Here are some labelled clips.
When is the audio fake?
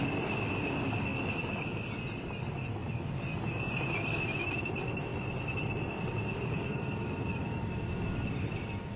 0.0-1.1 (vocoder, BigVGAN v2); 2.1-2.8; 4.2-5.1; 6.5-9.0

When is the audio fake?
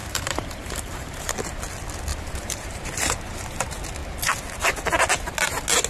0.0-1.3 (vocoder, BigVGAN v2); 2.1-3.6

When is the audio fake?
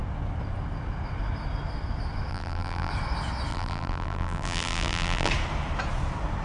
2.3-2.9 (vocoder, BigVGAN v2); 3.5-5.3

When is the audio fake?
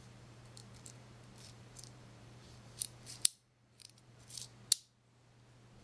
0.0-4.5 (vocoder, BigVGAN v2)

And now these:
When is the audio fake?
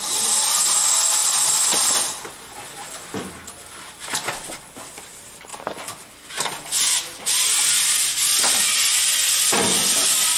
none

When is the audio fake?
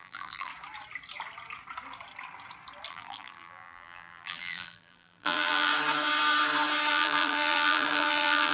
0.0-0.5 (vocoder, BigVGAN v2); 2.9-5.7; 6.9-8.5